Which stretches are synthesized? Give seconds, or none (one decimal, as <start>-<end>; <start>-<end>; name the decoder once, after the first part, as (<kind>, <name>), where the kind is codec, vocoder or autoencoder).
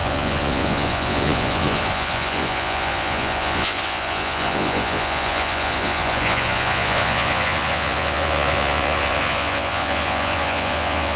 0.0-11.2 (vocoder, Vocos)